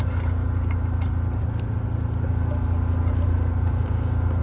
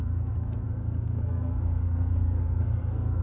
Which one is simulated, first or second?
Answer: second